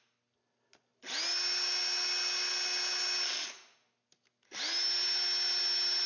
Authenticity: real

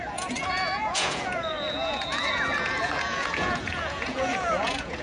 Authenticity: fake